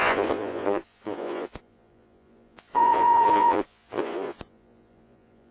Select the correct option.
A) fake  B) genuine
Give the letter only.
A